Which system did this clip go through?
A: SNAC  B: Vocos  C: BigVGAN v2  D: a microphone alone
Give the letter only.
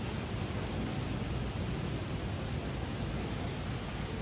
D